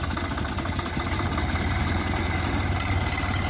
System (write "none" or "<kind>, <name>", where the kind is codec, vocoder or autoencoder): none